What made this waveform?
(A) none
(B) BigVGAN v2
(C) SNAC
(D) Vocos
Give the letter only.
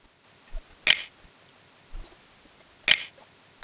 A